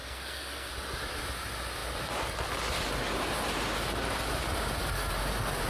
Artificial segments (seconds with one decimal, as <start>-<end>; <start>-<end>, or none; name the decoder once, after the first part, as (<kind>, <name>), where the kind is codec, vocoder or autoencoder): 0.0-0.7 (codec, SNAC)